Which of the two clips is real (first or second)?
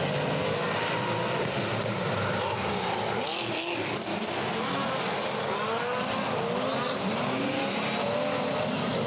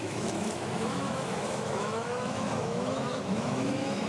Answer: first